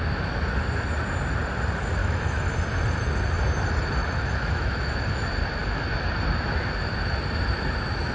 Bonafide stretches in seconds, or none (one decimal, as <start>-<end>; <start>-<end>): 0.0-2.0; 2.5-4.0; 5.0-8.1